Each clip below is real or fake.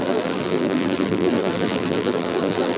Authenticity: fake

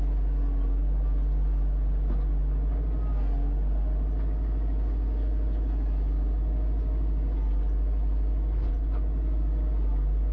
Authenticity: real